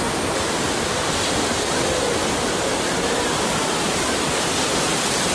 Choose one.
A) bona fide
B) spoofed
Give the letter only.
A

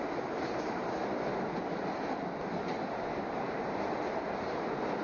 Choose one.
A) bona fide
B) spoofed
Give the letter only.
A